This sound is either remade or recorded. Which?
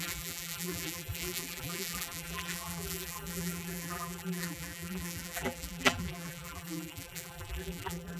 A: remade